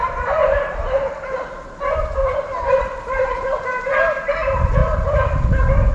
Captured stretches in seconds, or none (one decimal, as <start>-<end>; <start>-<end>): 0.4-2.0; 4.8-5.9